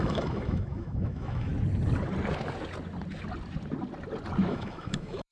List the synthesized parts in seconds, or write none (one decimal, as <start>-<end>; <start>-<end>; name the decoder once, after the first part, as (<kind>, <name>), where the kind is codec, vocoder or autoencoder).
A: 0.0-1.5 (autoencoder, DAC-VAE); 4.5-5.3